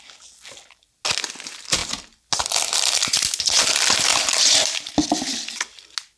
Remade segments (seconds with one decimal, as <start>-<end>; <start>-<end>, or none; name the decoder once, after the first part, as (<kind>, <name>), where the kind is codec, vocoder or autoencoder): 4.1-4.9 (vocoder, BigVGAN v2)